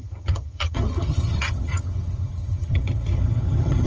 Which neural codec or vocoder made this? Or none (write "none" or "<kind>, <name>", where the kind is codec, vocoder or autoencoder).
vocoder, HiFi-GAN